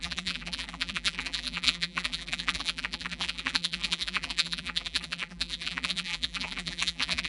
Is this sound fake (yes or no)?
yes